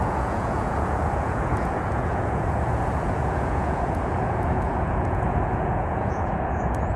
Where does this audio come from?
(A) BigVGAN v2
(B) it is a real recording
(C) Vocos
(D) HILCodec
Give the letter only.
C